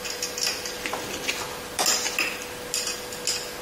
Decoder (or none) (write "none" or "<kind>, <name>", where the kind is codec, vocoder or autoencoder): none